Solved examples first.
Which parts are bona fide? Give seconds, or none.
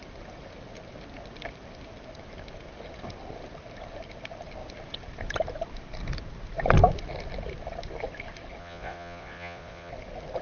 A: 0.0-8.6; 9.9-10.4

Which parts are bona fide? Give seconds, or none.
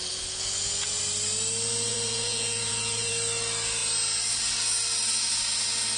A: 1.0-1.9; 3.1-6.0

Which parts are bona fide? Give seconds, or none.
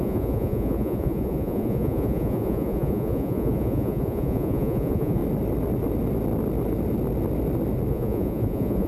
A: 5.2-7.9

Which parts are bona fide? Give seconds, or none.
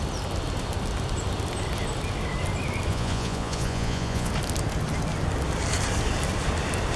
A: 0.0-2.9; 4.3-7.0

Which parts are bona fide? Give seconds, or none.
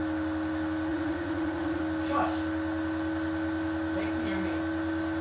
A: 0.0-0.9; 1.8-5.2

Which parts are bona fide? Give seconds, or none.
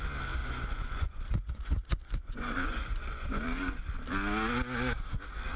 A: 0.0-0.4; 3.8-5.6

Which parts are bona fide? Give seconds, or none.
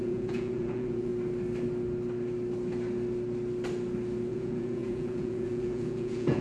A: 1.1-4.3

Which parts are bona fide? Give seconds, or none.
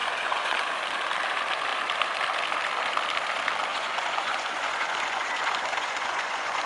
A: 0.7-3.7